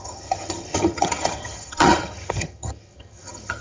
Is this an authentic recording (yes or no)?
no